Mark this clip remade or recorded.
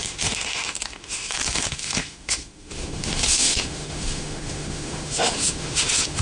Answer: remade